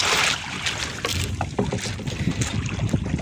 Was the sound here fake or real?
real